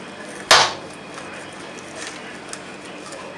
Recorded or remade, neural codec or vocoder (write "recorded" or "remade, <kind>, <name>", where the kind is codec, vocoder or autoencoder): recorded